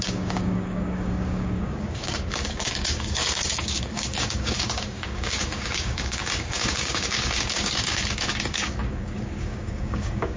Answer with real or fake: fake